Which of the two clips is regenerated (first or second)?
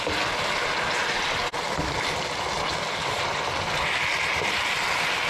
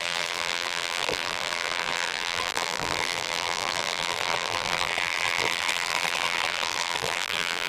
second